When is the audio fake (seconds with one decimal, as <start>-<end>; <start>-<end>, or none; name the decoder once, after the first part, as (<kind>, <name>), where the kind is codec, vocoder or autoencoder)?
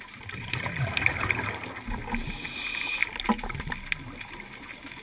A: none